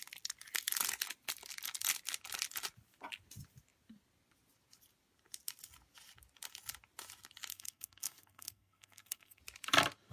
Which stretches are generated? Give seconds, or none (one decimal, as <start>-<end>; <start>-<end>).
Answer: 7.5-9.4

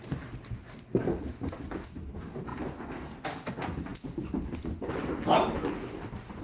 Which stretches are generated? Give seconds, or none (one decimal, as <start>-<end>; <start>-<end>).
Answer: none

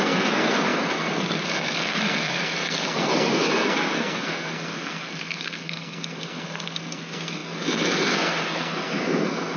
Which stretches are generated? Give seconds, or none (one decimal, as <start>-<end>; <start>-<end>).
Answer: 0.0-9.6